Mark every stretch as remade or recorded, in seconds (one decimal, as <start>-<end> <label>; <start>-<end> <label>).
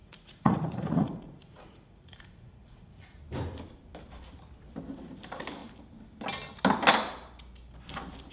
0.0-3.2 remade; 3.2-8.3 recorded